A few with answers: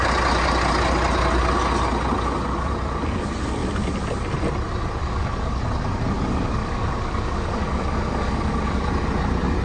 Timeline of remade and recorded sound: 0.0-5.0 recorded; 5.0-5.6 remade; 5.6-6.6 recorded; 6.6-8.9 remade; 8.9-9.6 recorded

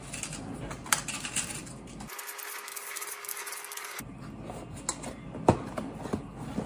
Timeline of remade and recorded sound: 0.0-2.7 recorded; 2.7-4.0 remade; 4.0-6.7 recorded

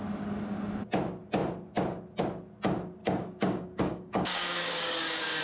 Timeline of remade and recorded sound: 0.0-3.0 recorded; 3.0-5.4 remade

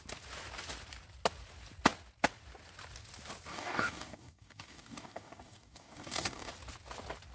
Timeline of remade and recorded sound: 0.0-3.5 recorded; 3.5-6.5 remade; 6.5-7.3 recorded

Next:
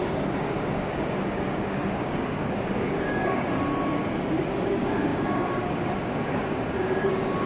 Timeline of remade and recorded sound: 0.0-3.7 remade; 3.7-4.5 recorded; 4.5-7.5 remade

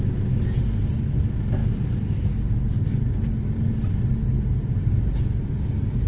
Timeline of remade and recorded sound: 0.0-6.1 recorded